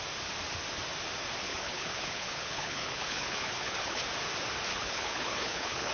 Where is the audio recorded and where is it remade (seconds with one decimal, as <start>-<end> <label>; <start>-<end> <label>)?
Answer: 0.0-1.4 recorded; 1.4-4.0 remade; 4.0-4.7 recorded; 4.7-5.9 remade